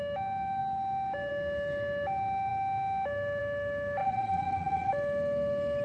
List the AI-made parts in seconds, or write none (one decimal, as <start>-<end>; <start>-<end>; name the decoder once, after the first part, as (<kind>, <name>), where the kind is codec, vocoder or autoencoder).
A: 4.0-4.9 (vocoder, Vocos)